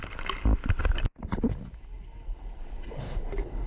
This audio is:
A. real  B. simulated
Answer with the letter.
A